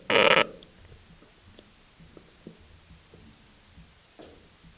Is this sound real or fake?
real